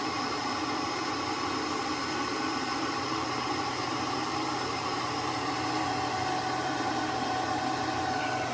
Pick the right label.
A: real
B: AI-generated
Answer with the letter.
B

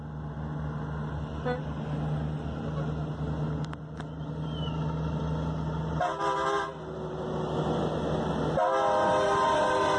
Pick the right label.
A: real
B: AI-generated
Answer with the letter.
A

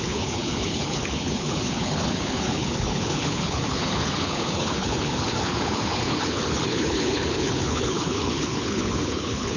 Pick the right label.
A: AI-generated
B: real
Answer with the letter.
A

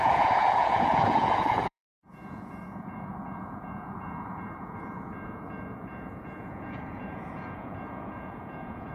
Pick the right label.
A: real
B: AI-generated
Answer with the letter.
B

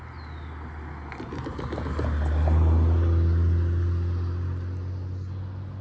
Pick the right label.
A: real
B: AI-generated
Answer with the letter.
A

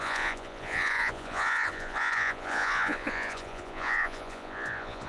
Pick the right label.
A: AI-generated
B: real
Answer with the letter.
A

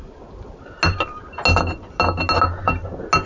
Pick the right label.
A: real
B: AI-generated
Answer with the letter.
A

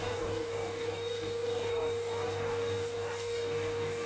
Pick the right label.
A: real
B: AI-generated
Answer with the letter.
B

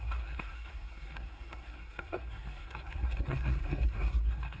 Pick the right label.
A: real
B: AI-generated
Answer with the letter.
B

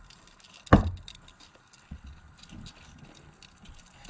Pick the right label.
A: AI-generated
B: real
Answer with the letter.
B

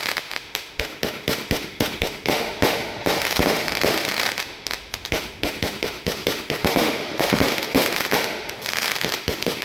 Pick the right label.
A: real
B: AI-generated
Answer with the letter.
B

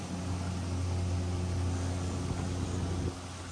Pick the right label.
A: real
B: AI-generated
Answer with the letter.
A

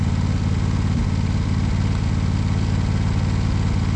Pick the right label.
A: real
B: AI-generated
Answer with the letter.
A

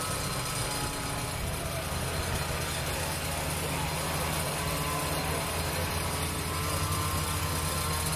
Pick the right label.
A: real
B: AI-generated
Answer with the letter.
A